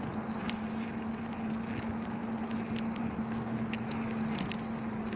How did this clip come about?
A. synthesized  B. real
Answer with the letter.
B